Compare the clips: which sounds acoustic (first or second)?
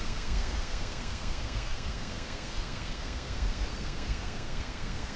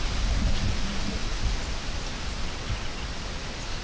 second